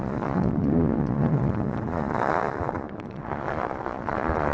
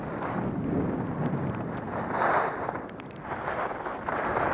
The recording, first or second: second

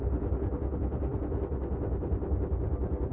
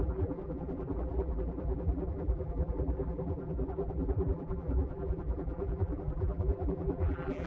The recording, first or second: first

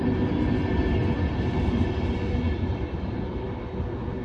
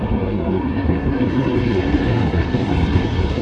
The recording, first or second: first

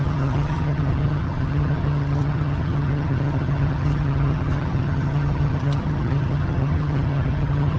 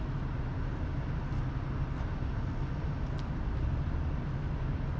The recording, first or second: second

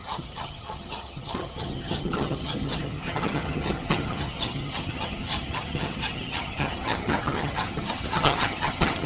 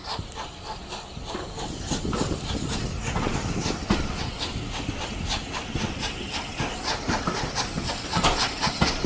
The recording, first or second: second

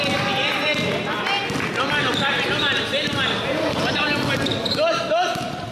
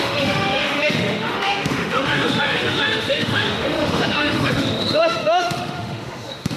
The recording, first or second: first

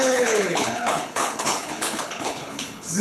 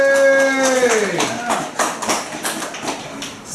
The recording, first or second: second